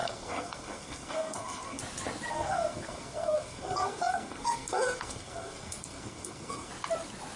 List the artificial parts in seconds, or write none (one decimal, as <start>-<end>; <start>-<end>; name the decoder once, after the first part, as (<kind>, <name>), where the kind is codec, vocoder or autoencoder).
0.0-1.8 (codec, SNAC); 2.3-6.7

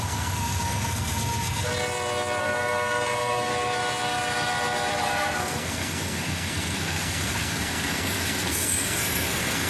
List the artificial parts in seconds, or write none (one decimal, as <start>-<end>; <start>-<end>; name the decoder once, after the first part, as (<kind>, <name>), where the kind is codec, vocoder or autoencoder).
0.0-1.7 (codec, SNAC); 2.4-3.5; 5.0-9.7

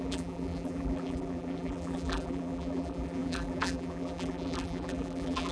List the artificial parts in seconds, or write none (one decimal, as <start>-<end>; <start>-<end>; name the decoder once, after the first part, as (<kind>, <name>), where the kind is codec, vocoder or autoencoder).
0.0-5.5 (vocoder, BigVGAN v2)

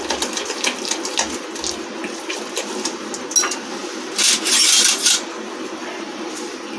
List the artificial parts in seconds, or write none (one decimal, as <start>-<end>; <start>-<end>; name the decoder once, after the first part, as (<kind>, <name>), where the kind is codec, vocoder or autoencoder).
none

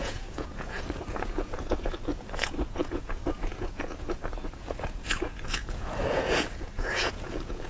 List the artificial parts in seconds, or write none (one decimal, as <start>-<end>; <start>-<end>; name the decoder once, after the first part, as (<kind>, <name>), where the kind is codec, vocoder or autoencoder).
0.0-7.7 (vocoder, Vocos)

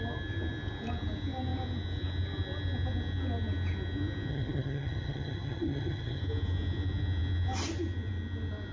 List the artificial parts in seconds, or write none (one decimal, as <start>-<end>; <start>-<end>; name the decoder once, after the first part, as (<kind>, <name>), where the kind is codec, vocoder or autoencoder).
4.3-6.2 (vocoder, HiFi-GAN)

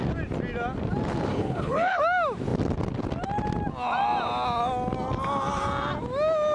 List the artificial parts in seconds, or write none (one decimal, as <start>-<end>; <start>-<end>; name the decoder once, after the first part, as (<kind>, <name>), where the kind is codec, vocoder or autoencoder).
1.3-2.0 (codec, HILCodec)